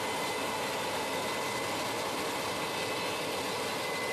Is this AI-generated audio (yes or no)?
no